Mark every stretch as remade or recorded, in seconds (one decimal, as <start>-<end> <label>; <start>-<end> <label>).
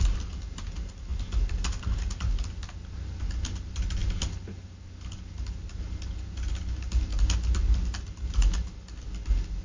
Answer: 0.0-9.6 recorded